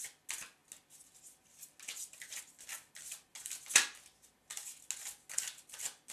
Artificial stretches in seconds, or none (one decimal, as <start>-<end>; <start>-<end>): none